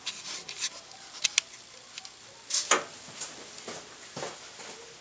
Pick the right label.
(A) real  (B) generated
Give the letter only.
A